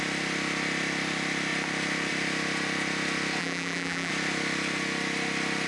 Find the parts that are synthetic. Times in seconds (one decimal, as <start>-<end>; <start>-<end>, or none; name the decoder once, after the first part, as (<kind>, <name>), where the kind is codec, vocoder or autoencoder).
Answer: 3.4-4.1 (vocoder, BigVGAN v2)